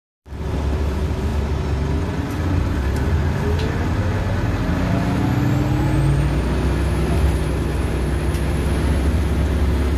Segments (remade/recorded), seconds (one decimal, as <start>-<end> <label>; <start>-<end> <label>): 0.0-10.0 recorded